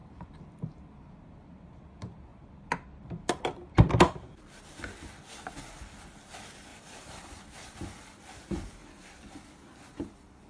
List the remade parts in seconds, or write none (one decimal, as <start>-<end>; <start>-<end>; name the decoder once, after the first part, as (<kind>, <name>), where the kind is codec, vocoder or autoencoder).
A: 6.7-7.4 (vocoder, BigVGAN v2)